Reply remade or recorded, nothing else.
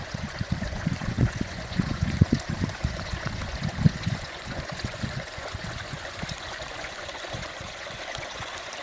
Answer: remade